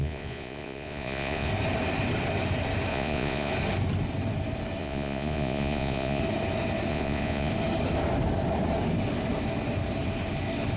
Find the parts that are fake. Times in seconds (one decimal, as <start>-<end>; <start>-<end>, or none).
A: 0.0-1.5; 2.9-3.5; 4.8-6.2; 6.9-7.5